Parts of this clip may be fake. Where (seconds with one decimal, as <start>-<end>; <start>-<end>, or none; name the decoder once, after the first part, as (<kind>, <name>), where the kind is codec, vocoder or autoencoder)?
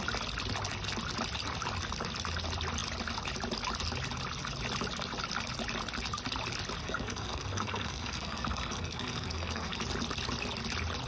6.8-9.8 (codec, SNAC)